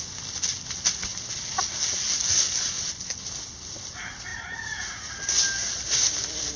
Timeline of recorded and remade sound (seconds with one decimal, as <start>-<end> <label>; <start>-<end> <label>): 0.0-4.3 recorded; 4.3-5.2 remade; 5.2-6.6 recorded

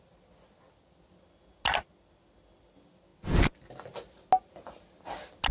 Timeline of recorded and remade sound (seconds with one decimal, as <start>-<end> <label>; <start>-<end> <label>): 0.0-5.5 recorded